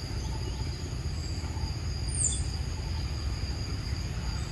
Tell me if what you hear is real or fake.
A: real